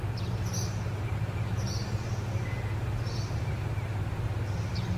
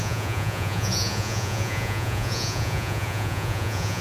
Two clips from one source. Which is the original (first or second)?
first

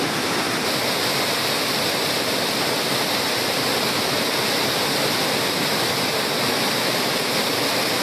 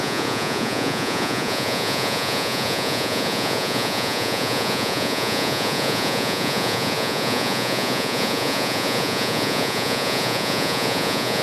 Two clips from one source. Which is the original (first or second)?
first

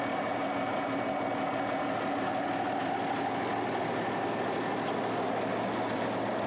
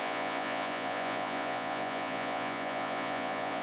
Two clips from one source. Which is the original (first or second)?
first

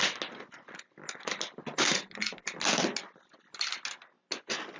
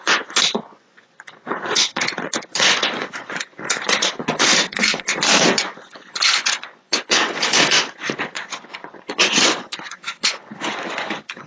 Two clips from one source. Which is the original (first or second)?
first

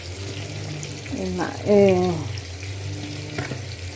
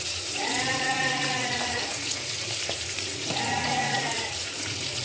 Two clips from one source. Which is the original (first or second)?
first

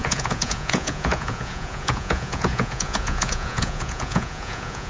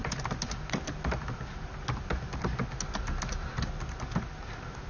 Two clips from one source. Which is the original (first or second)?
second